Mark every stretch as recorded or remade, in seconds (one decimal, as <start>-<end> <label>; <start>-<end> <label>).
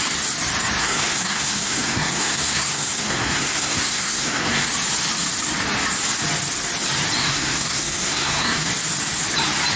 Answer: 0.0-0.8 recorded; 0.8-4.7 remade; 4.7-7.2 recorded; 7.2-8.7 remade; 8.7-9.8 recorded